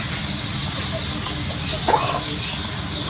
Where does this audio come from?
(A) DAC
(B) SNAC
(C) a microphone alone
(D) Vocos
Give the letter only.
C